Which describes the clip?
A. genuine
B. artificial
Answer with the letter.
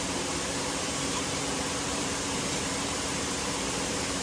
B